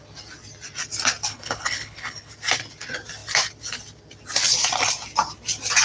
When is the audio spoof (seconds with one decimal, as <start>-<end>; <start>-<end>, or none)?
1.3-2.3